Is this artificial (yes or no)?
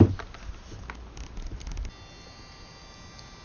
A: no